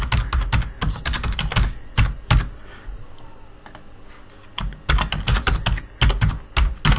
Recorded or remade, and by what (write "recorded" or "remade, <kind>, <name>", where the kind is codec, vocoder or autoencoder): recorded